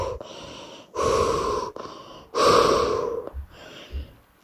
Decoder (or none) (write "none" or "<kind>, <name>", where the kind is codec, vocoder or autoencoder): none